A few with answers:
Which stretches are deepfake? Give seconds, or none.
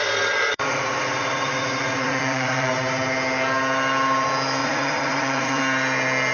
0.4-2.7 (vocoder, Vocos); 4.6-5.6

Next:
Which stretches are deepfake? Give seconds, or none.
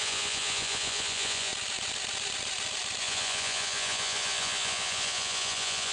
0.0-1.5 (vocoder, Vocos); 3.0-5.9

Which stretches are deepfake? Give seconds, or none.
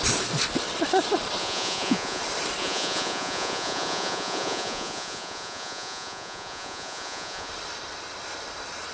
1.4-2.2 (vocoder, Vocos); 2.6-7.5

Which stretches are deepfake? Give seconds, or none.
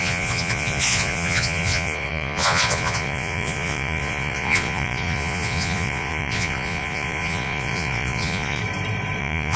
0.0-8.6 (vocoder, Vocos); 9.2-9.6